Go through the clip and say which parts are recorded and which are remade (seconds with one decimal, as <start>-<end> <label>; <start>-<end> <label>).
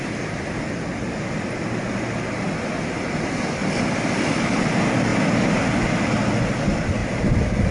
0.0-3.6 recorded; 3.6-4.1 remade; 4.1-7.0 recorded; 7.0-7.7 remade